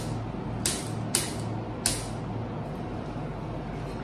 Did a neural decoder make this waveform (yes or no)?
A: no